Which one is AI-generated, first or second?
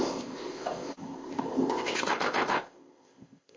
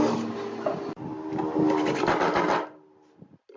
first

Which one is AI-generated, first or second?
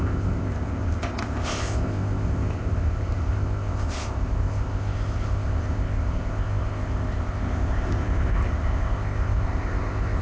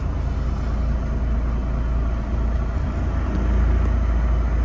first